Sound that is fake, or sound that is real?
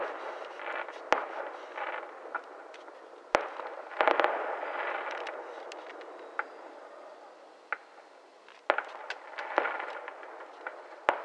real